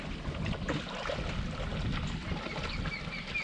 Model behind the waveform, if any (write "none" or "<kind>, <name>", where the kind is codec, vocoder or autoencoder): none